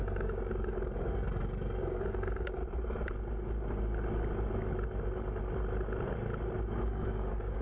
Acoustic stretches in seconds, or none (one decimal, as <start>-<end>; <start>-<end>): 2.6-6.7